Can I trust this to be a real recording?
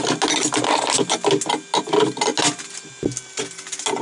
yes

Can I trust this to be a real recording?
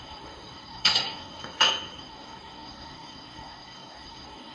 no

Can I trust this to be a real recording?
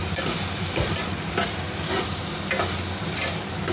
yes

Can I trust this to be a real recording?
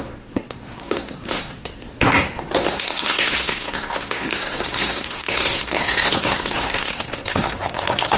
no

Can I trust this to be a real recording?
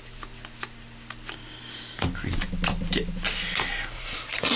yes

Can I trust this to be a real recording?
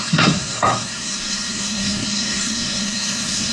no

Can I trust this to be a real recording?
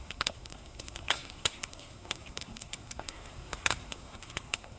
no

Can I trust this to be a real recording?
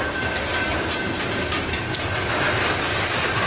yes